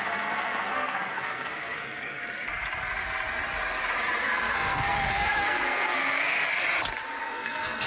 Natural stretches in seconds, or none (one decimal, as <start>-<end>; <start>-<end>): 2.2-4.2; 6.6-7.2